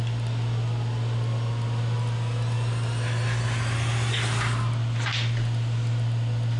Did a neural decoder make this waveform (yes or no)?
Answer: no